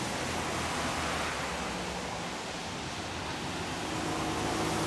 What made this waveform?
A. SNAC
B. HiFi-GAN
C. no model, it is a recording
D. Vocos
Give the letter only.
C